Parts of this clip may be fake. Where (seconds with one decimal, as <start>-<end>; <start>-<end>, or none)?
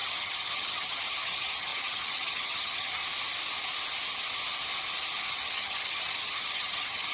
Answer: 0.0-3.0; 5.3-7.1